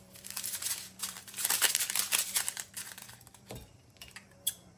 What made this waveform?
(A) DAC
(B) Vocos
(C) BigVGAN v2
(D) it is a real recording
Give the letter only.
C